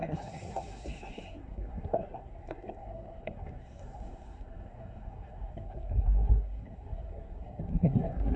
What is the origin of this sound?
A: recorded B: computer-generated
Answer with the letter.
B